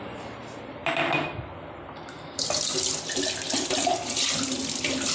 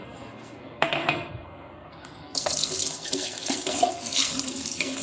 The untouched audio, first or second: first